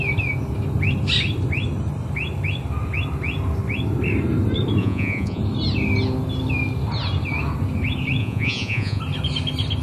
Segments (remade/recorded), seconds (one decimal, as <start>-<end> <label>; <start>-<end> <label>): 0.0-4.8 recorded; 4.8-5.4 remade; 5.4-8.2 recorded; 8.2-9.0 remade; 9.0-9.8 recorded